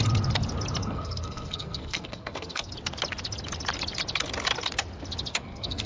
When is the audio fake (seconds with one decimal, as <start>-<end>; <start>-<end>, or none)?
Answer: 0.8-2.7; 5.3-5.9